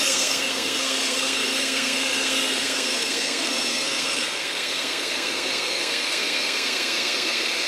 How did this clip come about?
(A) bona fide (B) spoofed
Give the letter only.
B